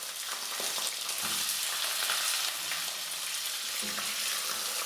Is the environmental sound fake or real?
real